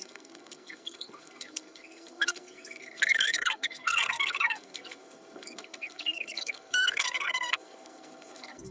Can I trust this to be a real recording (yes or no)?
no